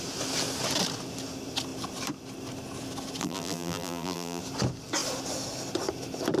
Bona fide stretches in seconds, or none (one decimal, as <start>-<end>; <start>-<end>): 0.0-3.2; 4.4-6.4

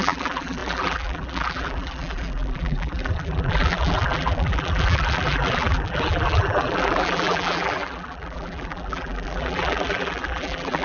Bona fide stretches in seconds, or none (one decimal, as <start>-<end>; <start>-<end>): none